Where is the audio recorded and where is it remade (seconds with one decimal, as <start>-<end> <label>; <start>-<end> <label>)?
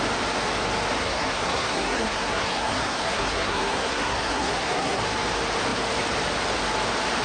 0.0-1.0 recorded; 1.0-5.0 remade; 5.0-7.2 recorded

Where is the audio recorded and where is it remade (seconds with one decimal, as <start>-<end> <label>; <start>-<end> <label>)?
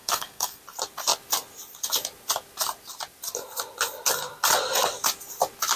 0.0-0.6 remade; 0.6-5.8 recorded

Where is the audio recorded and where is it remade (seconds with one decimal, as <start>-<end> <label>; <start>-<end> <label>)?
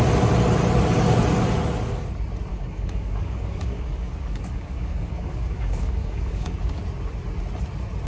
0.0-2.5 recorded; 2.5-6.8 remade; 6.8-8.1 recorded